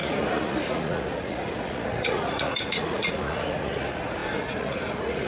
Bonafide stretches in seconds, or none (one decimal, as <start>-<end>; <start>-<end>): none